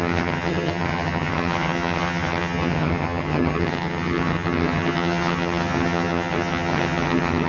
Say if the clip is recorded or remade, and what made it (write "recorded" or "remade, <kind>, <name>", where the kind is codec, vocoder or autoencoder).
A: remade, vocoder, HiFi-GAN